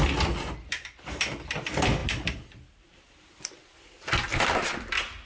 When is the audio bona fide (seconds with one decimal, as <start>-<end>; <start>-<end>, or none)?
0.0-5.3